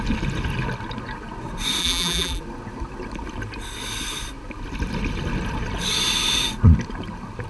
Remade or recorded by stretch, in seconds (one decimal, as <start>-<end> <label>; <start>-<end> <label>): 0.0-1.8 recorded; 1.8-2.4 remade; 2.4-7.5 recorded